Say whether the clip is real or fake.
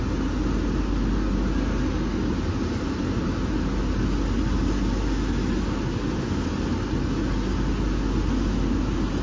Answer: real